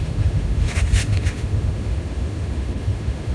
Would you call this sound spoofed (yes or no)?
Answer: yes